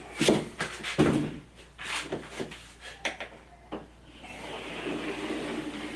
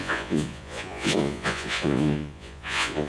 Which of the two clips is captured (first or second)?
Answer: first